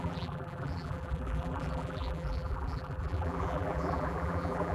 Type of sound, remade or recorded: remade